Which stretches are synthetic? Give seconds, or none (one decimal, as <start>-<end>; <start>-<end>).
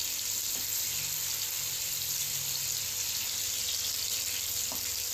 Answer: none